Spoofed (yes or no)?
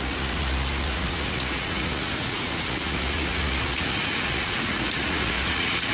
yes